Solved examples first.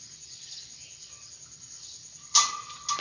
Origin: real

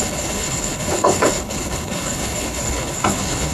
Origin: fake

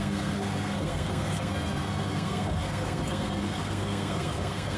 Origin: fake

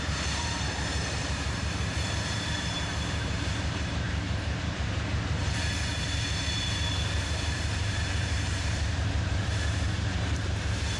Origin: fake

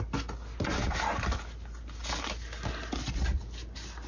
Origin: real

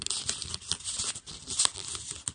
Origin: real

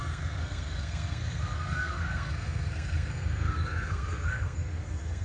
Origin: fake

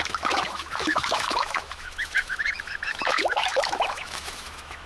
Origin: fake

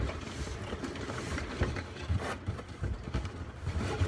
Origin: fake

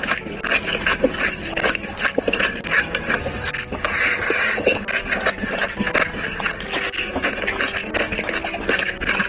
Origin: real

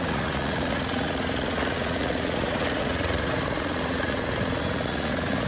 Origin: fake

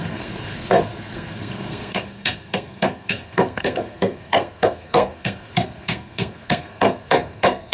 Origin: fake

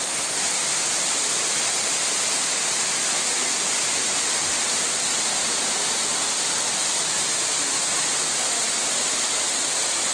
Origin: real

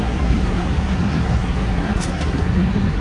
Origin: fake